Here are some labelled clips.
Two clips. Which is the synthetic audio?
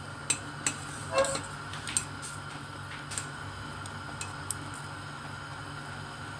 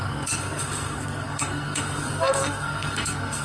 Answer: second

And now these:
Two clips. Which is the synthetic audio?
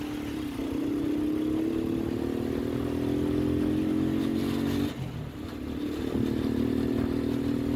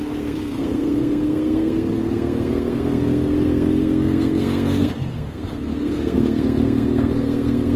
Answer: second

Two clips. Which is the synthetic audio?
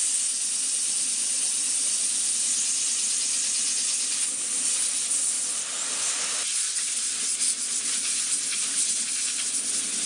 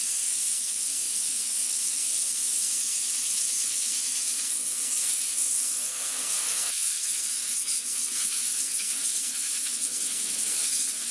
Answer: second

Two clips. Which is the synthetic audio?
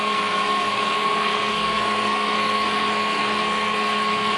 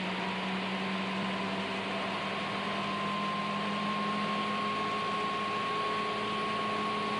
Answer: first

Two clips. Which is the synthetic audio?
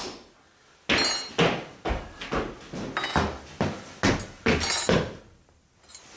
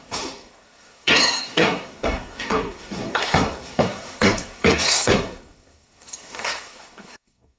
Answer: second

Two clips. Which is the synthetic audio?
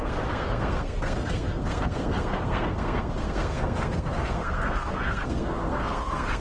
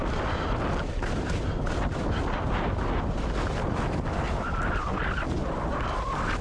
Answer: first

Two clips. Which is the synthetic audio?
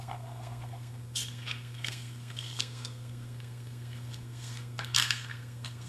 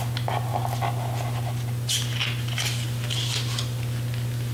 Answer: first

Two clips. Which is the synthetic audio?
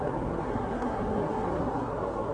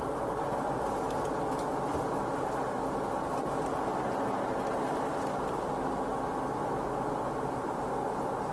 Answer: first